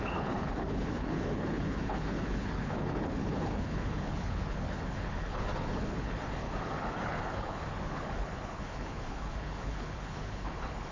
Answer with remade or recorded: remade